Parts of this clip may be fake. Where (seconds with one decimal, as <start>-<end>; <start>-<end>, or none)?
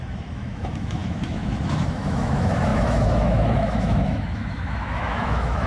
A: 0.0-5.7